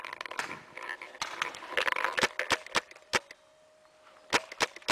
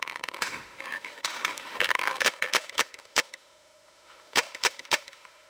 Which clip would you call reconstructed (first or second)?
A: second